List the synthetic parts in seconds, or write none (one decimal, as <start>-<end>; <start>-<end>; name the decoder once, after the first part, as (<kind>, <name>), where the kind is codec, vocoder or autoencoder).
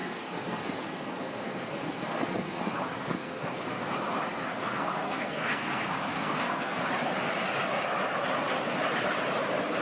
0.0-3.8 (codec, SNAC); 4.5-6.8